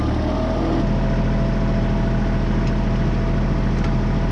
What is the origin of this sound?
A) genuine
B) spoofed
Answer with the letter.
A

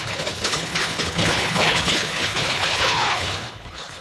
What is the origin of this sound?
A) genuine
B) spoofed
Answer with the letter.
B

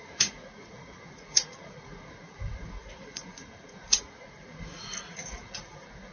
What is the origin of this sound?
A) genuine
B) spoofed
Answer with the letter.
B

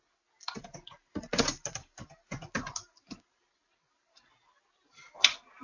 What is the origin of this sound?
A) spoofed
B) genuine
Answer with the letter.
B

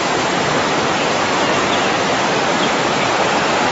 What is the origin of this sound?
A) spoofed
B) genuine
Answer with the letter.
B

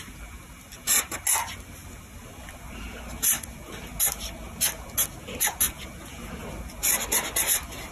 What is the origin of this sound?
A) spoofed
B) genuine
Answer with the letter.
B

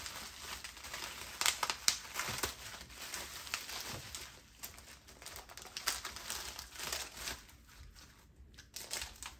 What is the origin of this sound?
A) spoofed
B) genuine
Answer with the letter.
B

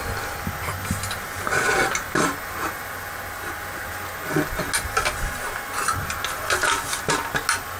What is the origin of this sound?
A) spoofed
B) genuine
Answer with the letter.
B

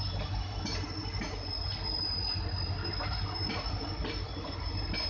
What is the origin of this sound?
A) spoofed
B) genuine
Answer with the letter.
B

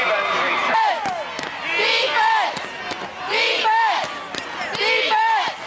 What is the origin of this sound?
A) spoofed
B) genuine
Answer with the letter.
B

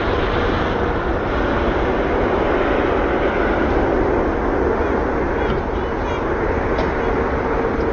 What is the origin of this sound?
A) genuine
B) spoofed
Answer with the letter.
A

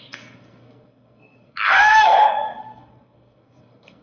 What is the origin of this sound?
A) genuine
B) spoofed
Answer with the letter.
B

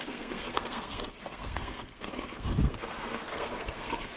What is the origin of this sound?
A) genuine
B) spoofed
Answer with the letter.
B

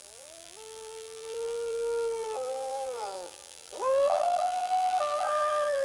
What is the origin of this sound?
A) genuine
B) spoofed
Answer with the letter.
B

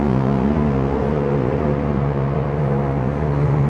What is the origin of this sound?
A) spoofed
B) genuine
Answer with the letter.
A